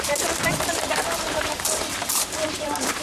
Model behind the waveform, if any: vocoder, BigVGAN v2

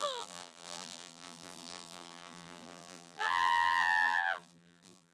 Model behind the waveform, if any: vocoder, BigVGAN v2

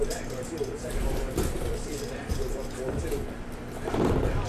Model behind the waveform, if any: vocoder, BigVGAN v2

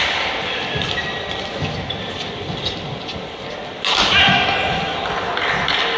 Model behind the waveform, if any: none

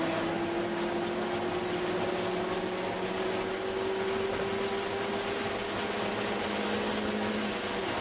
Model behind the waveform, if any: none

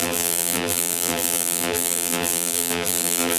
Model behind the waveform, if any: vocoder, BigVGAN v2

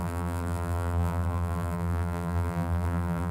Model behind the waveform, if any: vocoder, BigVGAN v2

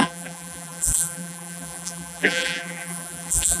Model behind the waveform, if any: vocoder, BigVGAN v2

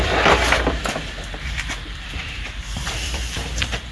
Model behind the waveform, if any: vocoder, BigVGAN v2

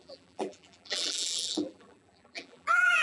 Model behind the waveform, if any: vocoder, BigVGAN v2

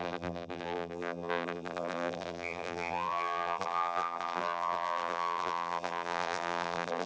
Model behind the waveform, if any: vocoder, BigVGAN v2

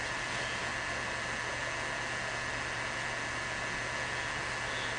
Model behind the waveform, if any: none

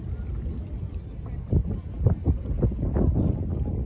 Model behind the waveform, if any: none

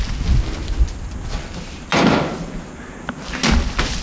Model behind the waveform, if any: none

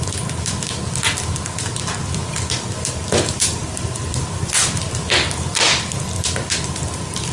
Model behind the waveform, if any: vocoder, BigVGAN v2